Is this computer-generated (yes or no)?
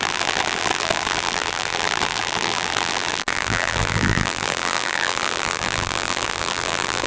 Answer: yes